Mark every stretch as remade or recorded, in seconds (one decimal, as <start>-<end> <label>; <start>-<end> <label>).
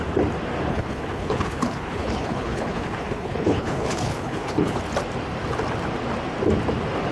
0.0-0.7 recorded; 0.7-4.8 remade; 4.8-7.1 recorded